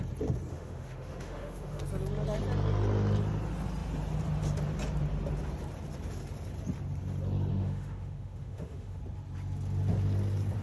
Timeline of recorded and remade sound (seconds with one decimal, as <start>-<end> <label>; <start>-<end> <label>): 0.0-0.5 recorded; 0.5-1.8 remade; 1.8-7.5 recorded; 7.5-9.0 remade; 9.0-10.6 recorded